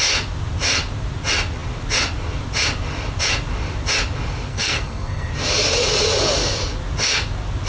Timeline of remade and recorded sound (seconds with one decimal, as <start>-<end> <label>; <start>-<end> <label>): 0.0-4.5 recorded; 4.5-5.3 remade; 5.3-7.7 recorded